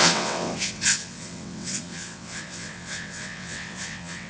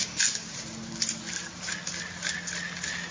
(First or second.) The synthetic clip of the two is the first